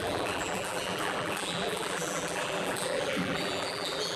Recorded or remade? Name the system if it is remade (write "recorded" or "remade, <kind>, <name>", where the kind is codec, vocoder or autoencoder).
remade, vocoder, BigVGAN v2